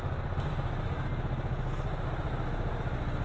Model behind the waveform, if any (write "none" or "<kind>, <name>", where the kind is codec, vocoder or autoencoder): none